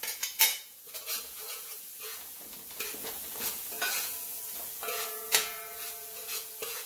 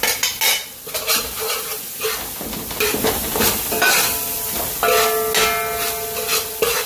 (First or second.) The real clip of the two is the second